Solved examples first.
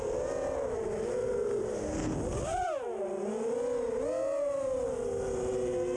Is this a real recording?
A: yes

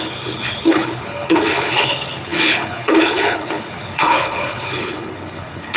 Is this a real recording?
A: no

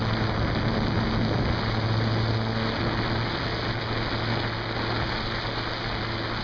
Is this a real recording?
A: yes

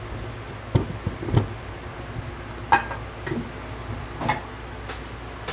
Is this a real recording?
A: yes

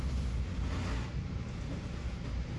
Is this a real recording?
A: yes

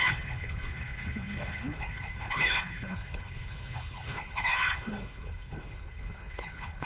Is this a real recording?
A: no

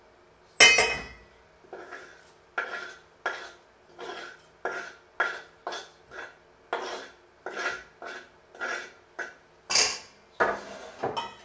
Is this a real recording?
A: yes